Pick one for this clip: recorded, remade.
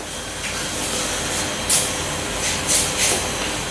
recorded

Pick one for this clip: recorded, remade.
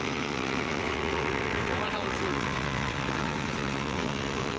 remade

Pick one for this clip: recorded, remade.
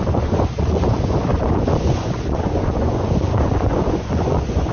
remade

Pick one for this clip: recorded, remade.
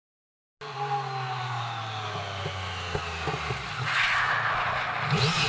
recorded